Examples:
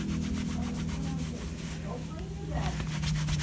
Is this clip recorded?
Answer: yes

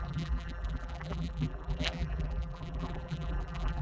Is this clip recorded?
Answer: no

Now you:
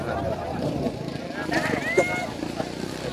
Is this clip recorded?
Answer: yes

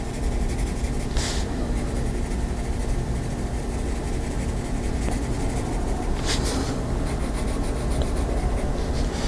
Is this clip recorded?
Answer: no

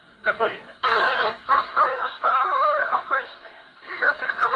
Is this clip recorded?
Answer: no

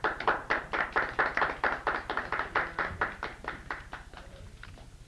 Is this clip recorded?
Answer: yes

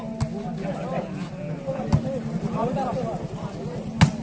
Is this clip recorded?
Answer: yes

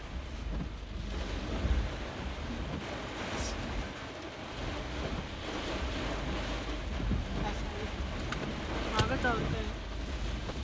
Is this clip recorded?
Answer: yes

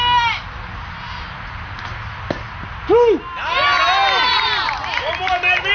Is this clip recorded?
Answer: yes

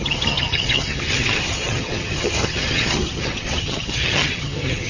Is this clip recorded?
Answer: no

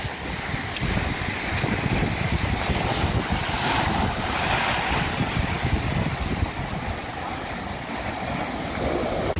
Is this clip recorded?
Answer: yes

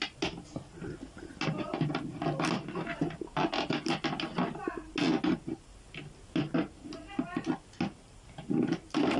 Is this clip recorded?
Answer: yes